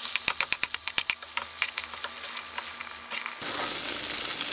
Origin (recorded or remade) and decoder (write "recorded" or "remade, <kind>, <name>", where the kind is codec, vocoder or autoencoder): recorded